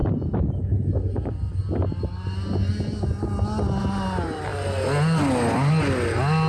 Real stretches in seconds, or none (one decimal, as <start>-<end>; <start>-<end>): 0.0-6.5

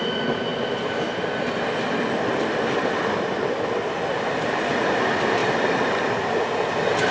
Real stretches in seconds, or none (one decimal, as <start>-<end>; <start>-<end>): 0.0-7.1

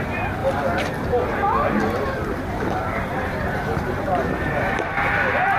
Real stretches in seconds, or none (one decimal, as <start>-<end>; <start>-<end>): 0.4-2.3

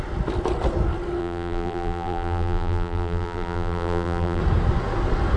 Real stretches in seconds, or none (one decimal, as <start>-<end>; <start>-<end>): 0.0-1.2; 4.4-5.4

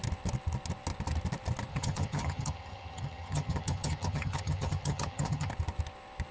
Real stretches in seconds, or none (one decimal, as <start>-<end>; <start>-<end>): 0.0-1.7; 5.5-6.3

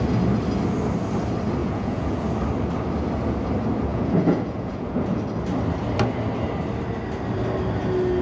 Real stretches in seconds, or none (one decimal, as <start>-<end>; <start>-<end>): 0.0-1.6; 2.2-3.9; 5.2-8.2

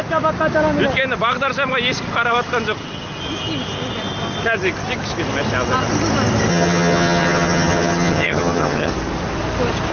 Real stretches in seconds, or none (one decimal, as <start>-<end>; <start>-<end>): 0.0-6.5; 8.9-9.9